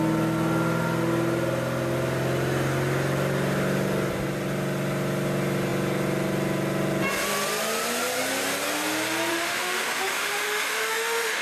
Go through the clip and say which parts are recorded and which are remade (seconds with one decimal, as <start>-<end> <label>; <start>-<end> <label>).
0.0-9.3 recorded; 9.3-11.4 remade